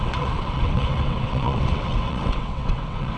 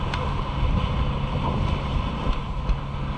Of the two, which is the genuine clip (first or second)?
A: second